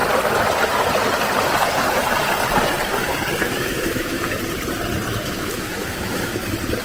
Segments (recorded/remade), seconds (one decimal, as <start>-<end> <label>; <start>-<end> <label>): 0.0-3.4 recorded; 3.4-4.4 remade; 4.4-5.1 recorded; 5.1-6.3 remade; 6.3-6.8 recorded